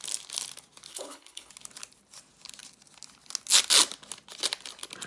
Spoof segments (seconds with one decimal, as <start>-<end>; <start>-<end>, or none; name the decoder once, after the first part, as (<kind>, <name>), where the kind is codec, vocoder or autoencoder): 0.9-1.5 (codec, HILCodec)